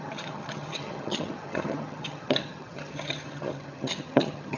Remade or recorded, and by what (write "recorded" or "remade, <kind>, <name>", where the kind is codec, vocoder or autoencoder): remade, vocoder, HiFi-GAN